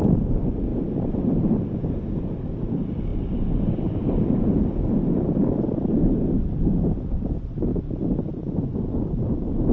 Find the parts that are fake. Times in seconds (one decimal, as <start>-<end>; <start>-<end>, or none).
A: none